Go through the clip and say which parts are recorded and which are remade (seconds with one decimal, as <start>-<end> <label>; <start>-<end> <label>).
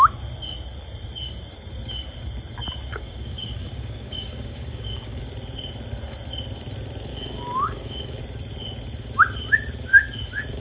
0.0-2.9 recorded; 2.9-5.2 remade; 5.2-7.1 recorded; 7.1-8.2 remade; 8.2-10.6 recorded